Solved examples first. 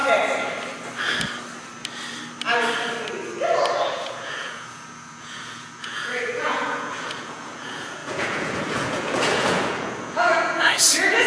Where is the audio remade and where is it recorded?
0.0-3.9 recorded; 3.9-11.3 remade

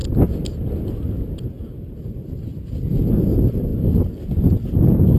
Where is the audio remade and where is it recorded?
0.0-5.2 recorded

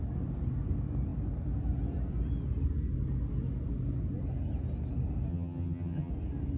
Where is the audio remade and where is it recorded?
0.0-5.3 recorded; 5.3-6.1 remade; 6.1-6.6 recorded

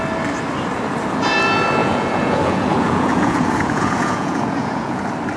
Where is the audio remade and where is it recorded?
0.0-1.8 recorded; 1.8-5.0 remade; 5.0-5.4 recorded